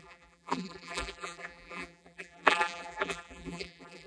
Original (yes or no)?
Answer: no